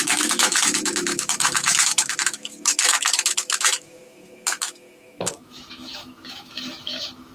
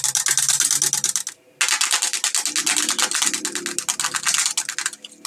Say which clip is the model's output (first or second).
first